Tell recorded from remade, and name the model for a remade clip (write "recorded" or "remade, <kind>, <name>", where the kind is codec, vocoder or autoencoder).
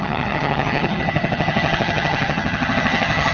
remade, vocoder, HiFi-GAN